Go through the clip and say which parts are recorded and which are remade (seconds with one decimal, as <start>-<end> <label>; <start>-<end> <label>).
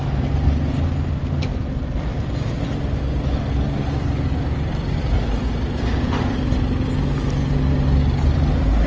0.0-8.9 recorded